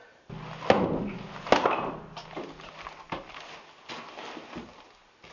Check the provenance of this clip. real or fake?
real